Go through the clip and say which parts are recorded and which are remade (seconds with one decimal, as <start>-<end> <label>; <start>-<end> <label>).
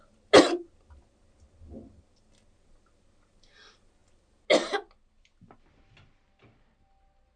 0.0-7.4 recorded